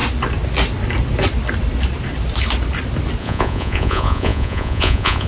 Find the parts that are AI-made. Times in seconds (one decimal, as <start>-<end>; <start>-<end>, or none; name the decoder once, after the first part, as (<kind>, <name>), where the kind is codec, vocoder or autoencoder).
3.2-5.3 (vocoder, Vocos)